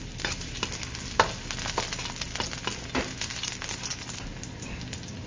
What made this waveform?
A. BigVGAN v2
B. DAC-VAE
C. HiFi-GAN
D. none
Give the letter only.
D